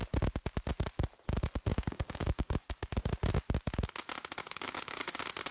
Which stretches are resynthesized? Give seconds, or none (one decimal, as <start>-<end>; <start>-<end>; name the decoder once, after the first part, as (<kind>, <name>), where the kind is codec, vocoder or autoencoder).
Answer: 1.7-3.1 (codec, DAC); 4.4-5.1